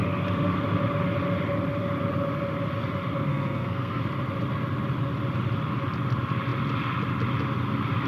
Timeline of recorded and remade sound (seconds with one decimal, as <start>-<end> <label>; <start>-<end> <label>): 0.0-3.3 recorded; 3.3-4.0 remade; 4.0-8.1 recorded